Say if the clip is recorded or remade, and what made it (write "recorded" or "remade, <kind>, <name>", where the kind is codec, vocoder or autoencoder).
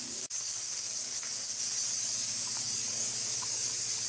remade, codec, DAC